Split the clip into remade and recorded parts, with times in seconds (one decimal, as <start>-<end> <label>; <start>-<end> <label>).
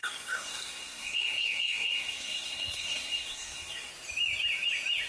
0.0-3.9 remade; 3.9-5.1 recorded